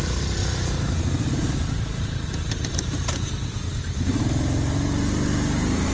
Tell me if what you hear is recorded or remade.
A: remade